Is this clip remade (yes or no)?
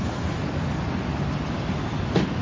no